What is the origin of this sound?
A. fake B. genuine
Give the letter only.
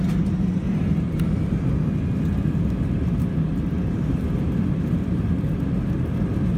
B